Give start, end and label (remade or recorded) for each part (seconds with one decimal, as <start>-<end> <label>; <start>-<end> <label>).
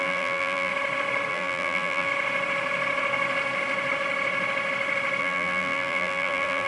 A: 0.0-0.7 remade; 0.7-1.3 recorded; 1.3-2.1 remade; 2.1-5.2 recorded; 5.2-6.7 remade